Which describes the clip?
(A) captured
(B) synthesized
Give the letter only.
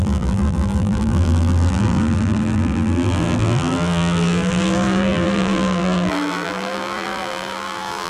B